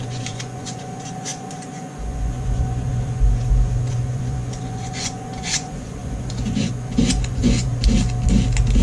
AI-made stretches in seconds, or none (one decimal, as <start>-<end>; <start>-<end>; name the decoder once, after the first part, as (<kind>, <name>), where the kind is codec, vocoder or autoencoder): 0.0-7.7 (vocoder, Vocos)